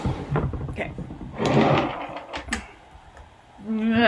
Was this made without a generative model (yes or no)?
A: yes